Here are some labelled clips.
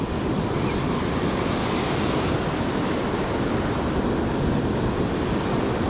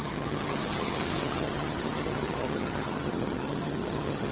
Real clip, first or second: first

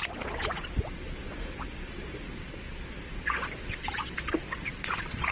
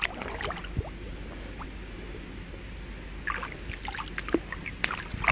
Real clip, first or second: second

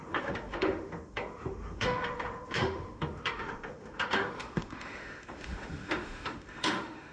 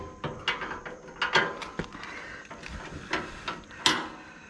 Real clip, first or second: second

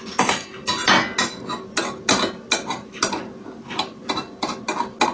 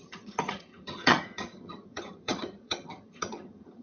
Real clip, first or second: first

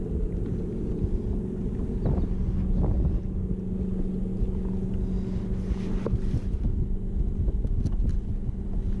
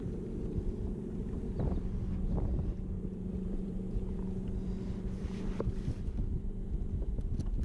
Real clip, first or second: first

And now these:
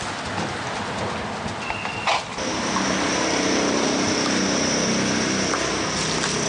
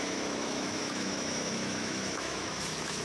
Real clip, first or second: first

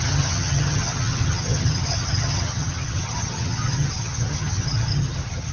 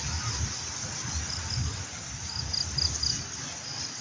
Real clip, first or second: second